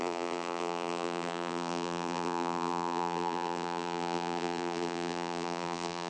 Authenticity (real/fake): fake